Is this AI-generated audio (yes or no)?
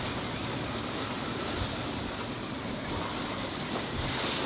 no